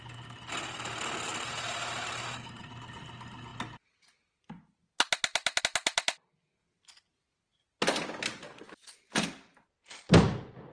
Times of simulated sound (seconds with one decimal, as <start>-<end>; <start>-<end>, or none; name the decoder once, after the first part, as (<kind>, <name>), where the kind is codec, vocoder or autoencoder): none